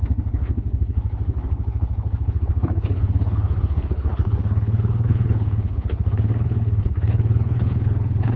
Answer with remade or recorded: remade